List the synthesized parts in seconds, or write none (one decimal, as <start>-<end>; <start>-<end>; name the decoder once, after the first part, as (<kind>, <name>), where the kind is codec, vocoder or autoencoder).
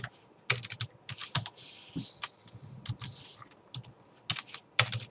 none